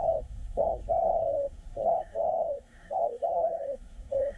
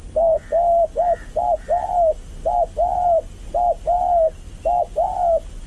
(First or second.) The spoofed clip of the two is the first